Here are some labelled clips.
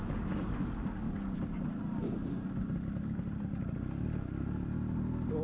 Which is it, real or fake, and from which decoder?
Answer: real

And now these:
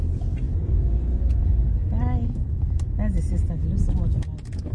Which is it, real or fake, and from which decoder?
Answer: real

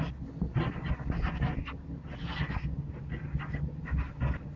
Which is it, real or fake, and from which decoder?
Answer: real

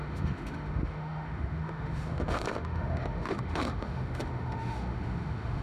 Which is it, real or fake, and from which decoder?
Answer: fake, autoencoder, DAC-VAE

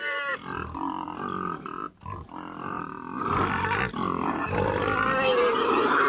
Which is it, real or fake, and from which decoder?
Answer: real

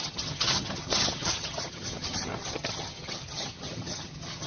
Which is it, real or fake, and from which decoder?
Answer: fake, vocoder, HiFi-GAN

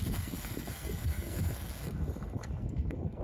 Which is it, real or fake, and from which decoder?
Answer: fake, codec, SNAC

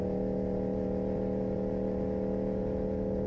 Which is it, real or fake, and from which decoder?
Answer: real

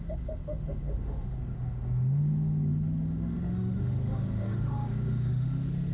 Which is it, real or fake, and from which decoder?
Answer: fake, autoencoder, DAC-VAE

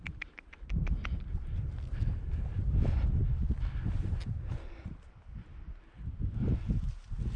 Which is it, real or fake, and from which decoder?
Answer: real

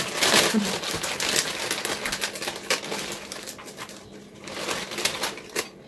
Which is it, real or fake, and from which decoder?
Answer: real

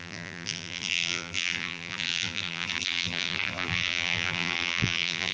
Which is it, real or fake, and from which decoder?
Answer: fake, vocoder, BigVGAN v2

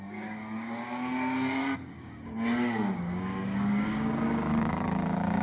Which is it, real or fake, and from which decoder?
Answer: fake, codec, DAC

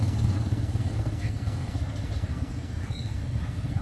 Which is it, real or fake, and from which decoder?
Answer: fake, codec, SNAC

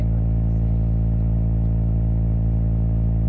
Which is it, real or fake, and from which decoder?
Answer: real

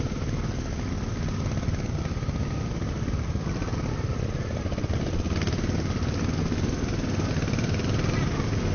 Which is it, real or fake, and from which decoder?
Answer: real